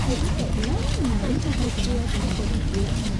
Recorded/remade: remade